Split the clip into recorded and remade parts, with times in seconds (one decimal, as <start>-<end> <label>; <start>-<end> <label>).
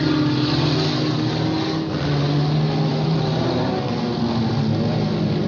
0.0-2.9 recorded; 2.9-3.9 remade; 3.9-5.5 recorded